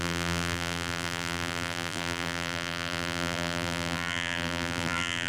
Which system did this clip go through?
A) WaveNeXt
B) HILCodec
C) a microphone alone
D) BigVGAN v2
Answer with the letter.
D